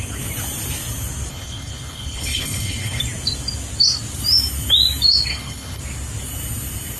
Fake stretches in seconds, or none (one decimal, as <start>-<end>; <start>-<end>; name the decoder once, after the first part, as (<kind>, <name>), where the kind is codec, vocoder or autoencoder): 1.3-3.0 (codec, HILCodec); 5.3-5.8